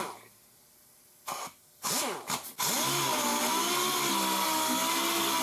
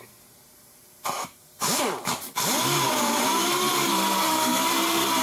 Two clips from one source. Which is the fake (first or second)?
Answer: second